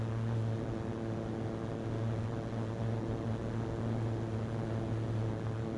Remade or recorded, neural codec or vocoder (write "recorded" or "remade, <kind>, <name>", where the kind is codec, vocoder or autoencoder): recorded